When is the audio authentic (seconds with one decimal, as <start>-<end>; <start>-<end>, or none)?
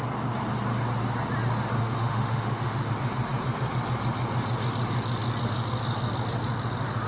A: 0.0-1.8; 2.9-7.1